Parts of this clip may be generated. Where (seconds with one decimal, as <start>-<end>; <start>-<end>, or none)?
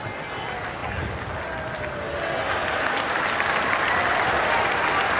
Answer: none